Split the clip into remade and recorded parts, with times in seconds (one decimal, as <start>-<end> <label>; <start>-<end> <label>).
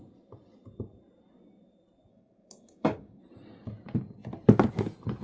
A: 0.0-2.1 recorded; 2.1-3.2 remade; 3.2-5.2 recorded